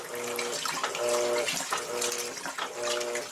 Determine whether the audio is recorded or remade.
recorded